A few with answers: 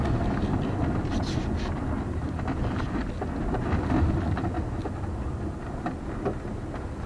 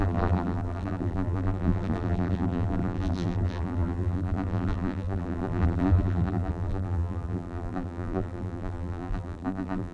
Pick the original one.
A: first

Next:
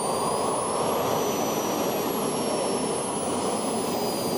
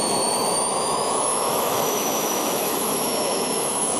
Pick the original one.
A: first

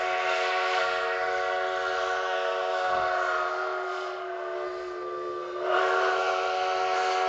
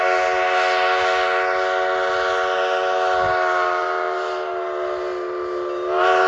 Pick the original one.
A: second